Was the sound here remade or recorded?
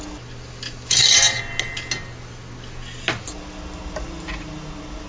recorded